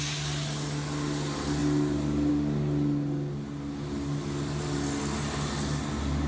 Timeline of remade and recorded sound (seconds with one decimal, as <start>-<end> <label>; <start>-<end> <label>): 0.0-6.3 recorded